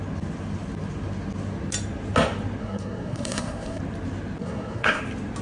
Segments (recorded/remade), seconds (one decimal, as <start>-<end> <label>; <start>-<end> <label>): 0.0-2.6 recorded; 2.6-3.8 remade; 3.8-4.4 recorded; 4.4-5.0 remade; 5.0-5.4 recorded